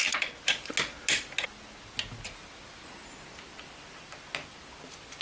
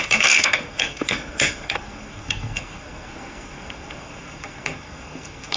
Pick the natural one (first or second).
first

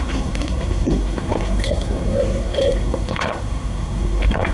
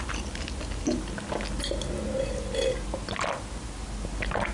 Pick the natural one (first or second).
second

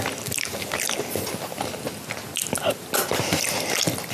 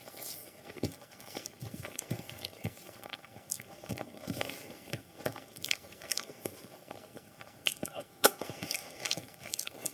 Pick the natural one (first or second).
first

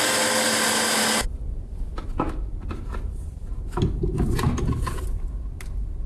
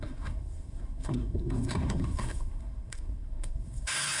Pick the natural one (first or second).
first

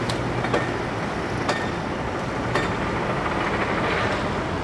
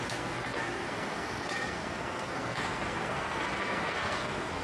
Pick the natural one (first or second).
first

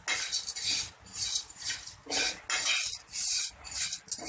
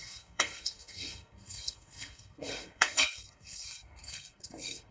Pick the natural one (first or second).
first